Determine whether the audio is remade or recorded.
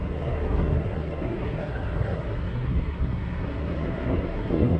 remade